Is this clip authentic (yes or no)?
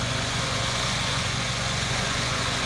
no